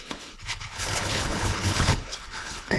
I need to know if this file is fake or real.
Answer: fake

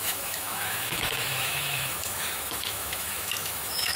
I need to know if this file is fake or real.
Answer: fake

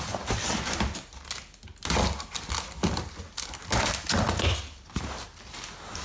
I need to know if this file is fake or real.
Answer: real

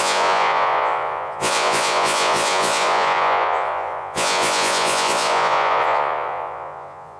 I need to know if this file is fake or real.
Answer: fake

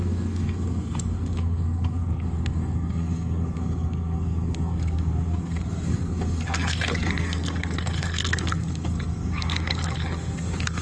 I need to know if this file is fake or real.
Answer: fake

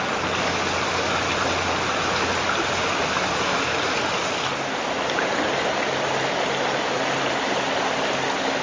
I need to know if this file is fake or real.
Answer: real